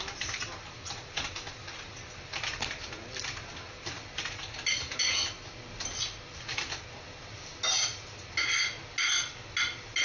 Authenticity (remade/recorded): recorded